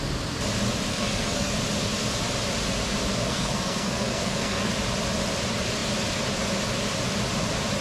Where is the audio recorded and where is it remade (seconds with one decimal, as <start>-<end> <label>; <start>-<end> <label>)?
0.0-0.9 recorded; 0.9-1.5 remade; 1.5-3.1 recorded; 3.1-4.7 remade; 4.7-7.8 recorded